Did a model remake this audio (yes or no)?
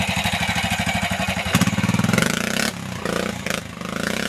no